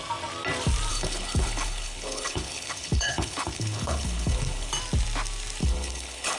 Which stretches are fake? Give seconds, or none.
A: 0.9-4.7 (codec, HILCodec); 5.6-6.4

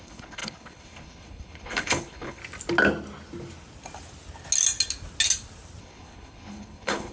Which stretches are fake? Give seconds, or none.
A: 0.0-2.4 (codec, HILCodec); 5.8-7.1

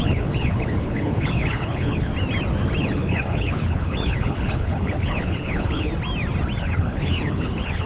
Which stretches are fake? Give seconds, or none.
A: 0.0-2.1 (codec, HILCodec); 2.8-5.9; 6.6-7.9

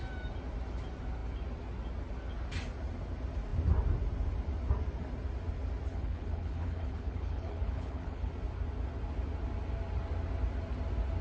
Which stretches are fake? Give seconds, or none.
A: 5.9-8.3 (codec, HILCodec)

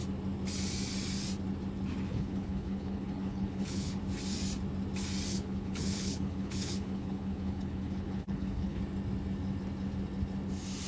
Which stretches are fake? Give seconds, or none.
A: 2.1-4.0 (codec, HILCodec); 5.3-8.8